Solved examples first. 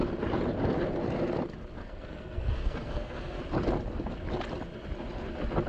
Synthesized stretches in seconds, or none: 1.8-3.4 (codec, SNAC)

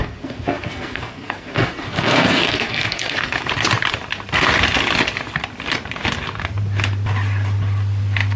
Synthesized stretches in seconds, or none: 0.0-3.5 (codec, SNAC)

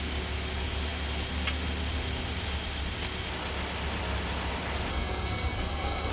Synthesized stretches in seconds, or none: 4.9-6.1 (codec, SNAC)

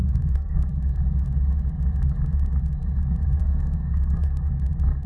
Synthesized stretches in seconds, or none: 0.0-0.6 (codec, SNAC); 3.4-4.5

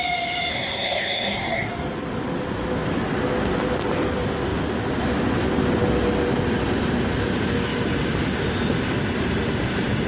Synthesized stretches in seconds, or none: 0.5-1.7 (codec, SNAC)

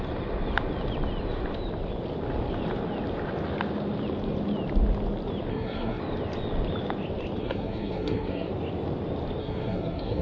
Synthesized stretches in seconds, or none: 5.5-6.0 (codec, SNAC); 7.4-8.5; 9.4-10.2